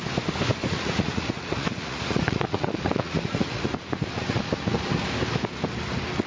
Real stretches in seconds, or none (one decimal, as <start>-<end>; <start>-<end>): 0.0-0.6; 4.4-6.3